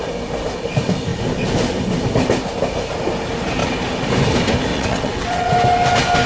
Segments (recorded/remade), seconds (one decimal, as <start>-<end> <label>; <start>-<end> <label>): 0.0-4.7 recorded; 4.7-5.5 remade; 5.5-6.3 recorded

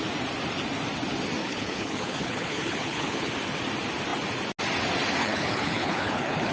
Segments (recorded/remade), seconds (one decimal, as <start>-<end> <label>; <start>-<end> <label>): 0.0-1.4 recorded; 1.4-3.3 remade; 3.3-5.2 recorded; 5.2-6.5 remade

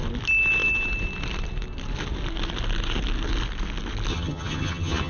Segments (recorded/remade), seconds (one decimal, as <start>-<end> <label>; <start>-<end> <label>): 0.0-4.1 recorded; 4.1-5.1 remade

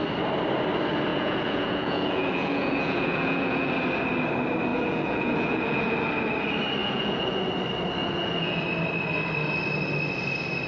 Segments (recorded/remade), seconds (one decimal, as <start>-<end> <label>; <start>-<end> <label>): 0.0-1.1 recorded; 1.1-3.7 remade; 3.7-4.7 recorded; 4.7-6.1 remade; 6.1-6.8 recorded; 6.8-7.4 remade; 7.4-8.0 recorded; 8.0-8.6 remade; 8.6-10.7 recorded

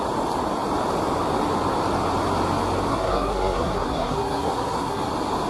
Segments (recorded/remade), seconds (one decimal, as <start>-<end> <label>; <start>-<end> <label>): 0.0-2.9 recorded; 2.9-5.0 remade; 5.0-5.5 recorded

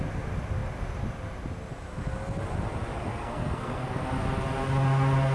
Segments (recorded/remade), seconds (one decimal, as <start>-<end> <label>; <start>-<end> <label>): 0.0-3.1 recorded; 3.1-4.0 remade; 4.0-5.3 recorded